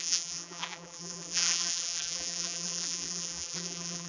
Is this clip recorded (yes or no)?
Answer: no